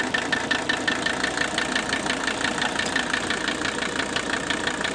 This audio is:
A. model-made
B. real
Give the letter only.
B